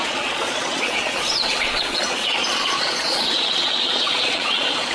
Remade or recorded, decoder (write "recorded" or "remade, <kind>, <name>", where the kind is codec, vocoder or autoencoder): remade, vocoder, Vocos